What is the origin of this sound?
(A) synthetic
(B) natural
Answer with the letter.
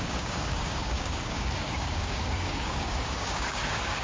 A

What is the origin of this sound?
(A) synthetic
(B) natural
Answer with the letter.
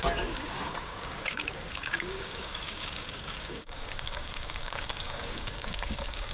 A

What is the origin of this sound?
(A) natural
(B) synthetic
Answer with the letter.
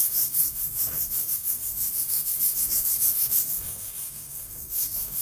B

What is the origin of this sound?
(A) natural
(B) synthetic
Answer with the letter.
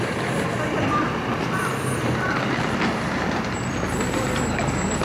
A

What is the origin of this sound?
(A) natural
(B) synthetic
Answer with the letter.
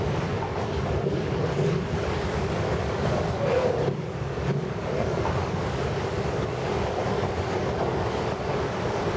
B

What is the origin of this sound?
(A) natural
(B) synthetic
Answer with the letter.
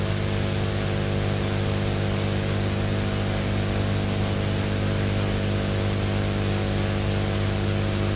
A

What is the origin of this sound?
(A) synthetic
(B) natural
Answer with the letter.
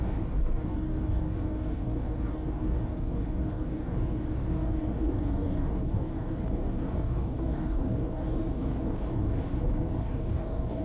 A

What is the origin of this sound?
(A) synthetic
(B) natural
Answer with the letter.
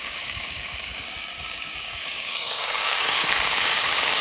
A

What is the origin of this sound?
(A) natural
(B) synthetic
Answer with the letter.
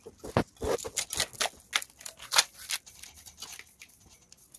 A